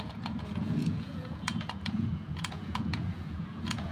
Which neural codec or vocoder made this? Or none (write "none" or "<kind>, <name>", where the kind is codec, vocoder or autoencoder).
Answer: vocoder, Vocos